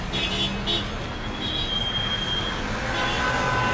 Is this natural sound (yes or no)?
yes